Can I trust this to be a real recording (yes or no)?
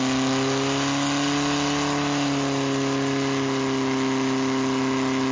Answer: yes